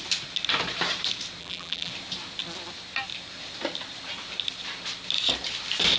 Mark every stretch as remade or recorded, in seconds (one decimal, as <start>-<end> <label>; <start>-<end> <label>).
0.0-1.4 recorded; 1.4-1.9 remade; 1.9-6.0 recorded

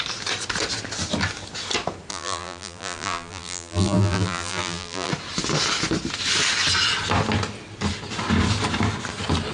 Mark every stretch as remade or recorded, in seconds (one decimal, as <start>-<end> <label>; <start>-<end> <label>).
0.0-2.1 recorded; 2.1-5.1 remade; 5.1-9.5 recorded

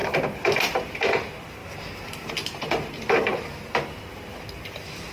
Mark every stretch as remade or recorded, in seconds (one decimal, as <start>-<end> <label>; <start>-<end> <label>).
0.0-0.5 remade; 0.5-5.1 recorded

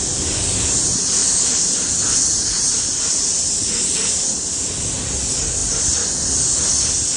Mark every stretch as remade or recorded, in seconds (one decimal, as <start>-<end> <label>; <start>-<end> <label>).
0.0-1.2 recorded; 1.2-4.9 remade; 4.9-5.6 recorded; 5.6-6.7 remade; 6.7-7.2 recorded

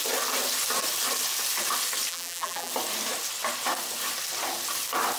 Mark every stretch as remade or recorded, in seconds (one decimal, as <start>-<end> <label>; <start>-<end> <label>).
0.0-2.1 recorded; 2.1-2.7 remade; 2.7-5.2 recorded

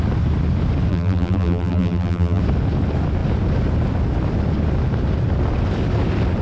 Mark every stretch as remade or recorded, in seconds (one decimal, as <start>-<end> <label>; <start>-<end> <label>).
0.0-0.9 recorded; 0.9-2.4 remade; 2.4-6.4 recorded

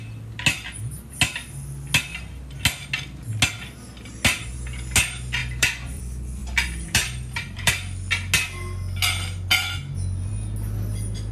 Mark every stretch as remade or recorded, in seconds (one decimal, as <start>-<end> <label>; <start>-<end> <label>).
0.0-5.4 recorded; 5.4-6.0 remade; 6.0-6.4 recorded; 6.4-7.7 remade; 7.7-11.3 recorded